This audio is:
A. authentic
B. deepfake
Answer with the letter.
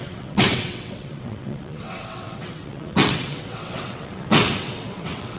B